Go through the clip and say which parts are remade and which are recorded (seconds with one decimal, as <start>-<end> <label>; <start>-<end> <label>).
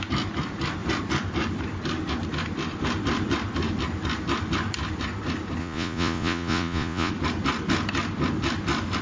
0.0-5.6 recorded; 5.6-7.1 remade; 7.1-9.0 recorded